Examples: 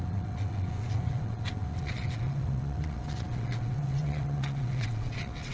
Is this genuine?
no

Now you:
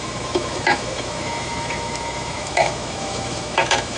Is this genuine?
no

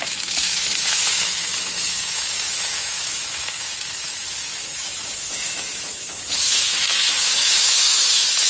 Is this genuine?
no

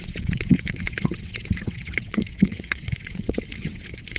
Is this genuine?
no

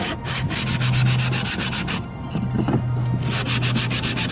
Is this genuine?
yes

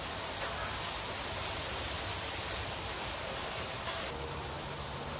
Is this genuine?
yes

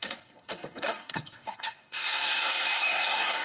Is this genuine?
no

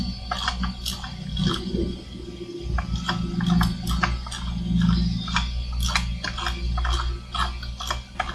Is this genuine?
yes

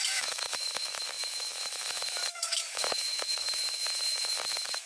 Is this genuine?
no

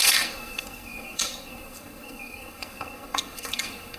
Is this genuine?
no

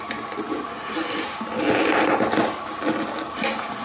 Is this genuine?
yes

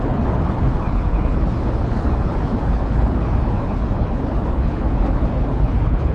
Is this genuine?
no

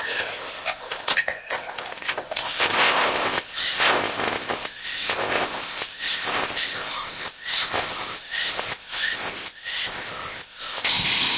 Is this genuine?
no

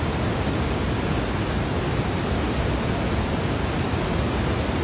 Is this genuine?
yes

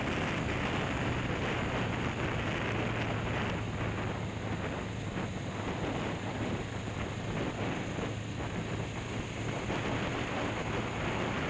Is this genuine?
yes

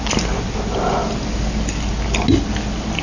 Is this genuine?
yes